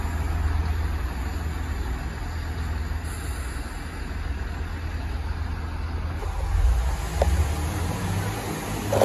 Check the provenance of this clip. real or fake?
real